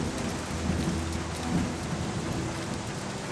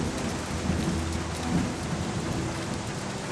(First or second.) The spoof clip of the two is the second